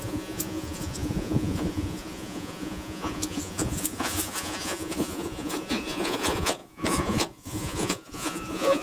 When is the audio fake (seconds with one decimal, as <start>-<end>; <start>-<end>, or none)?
0.0-8.8